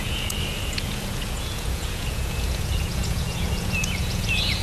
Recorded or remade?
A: remade